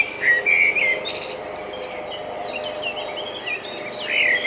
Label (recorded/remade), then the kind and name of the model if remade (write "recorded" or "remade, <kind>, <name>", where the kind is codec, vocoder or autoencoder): recorded